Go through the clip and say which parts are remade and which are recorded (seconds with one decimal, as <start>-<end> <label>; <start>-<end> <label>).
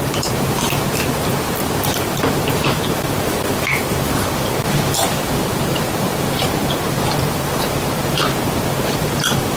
0.0-9.6 remade